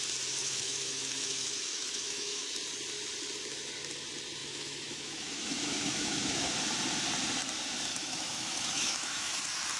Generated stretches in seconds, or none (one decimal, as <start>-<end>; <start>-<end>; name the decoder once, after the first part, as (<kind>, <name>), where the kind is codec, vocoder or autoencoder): 0.4-2.5 (autoencoder, DAC-VAE); 4.4-6.5; 7.9-9.4